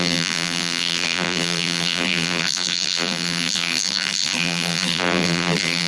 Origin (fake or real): fake